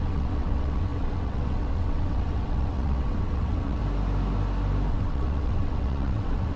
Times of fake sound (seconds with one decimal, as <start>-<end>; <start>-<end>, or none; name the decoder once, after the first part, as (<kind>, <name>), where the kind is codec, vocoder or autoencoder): 0.0-3.8 (vocoder, WaveNeXt); 4.9-6.6